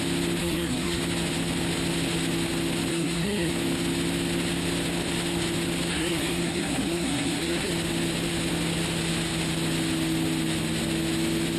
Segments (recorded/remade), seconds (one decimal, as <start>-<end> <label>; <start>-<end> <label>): 0.0-0.4 recorded; 0.4-1.0 remade; 1.0-2.9 recorded; 2.9-3.5 remade; 3.5-5.9 recorded; 5.9-7.7 remade; 7.7-11.6 recorded